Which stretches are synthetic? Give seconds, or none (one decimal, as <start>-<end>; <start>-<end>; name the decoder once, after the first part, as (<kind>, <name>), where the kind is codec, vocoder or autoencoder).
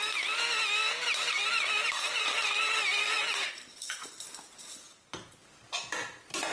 1.2-5.1 (vocoder, BigVGAN v2)